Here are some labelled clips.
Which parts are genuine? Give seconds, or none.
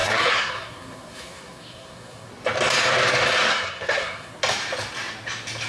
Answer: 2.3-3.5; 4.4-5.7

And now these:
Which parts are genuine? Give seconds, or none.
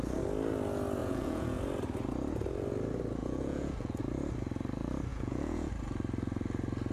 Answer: 0.0-1.0; 1.6-3.2; 4.0-5.1; 5.7-6.9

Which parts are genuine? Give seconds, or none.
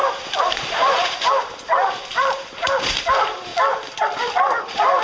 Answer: 3.5-4.6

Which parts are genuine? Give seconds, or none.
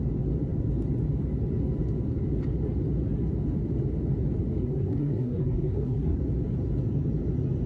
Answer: 0.0-4.6; 6.2-7.7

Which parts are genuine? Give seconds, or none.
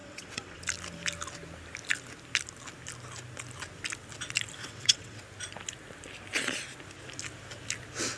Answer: 0.6-4.6; 5.2-8.2